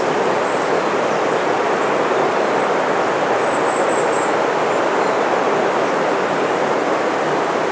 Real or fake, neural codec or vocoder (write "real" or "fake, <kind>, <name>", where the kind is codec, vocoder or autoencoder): real